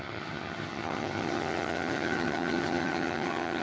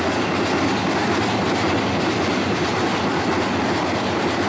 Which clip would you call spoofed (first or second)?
first